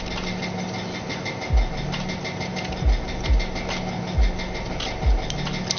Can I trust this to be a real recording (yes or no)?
yes